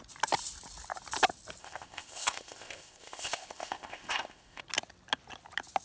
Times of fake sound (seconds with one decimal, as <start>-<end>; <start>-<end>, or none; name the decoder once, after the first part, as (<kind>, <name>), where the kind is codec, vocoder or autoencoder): 1.6-4.6 (codec, ZipCodec)